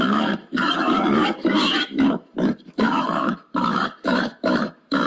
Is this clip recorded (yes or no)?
no